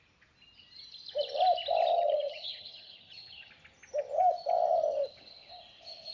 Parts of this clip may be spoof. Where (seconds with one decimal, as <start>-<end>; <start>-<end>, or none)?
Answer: 1.9-3.5

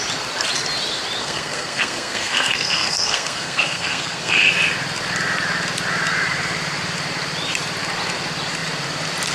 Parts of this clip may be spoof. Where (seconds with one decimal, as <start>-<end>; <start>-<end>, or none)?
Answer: 1.2-4.5

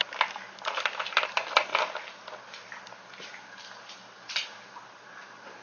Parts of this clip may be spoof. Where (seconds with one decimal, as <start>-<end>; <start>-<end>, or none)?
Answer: 1.7-5.1